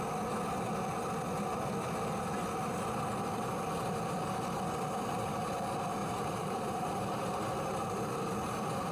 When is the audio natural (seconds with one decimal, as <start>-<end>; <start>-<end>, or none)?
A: 0.0-6.0; 7.2-8.9